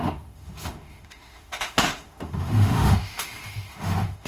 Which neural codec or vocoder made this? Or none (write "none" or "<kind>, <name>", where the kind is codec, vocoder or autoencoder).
autoencoder, DAC-VAE